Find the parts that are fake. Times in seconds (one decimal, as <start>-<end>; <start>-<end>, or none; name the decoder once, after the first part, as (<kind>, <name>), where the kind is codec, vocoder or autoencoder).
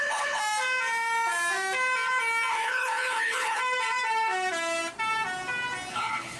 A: 0.0-0.4 (codec, HILCodec); 2.5-3.6; 5.9-6.4